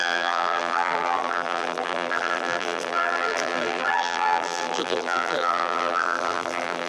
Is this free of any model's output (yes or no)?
no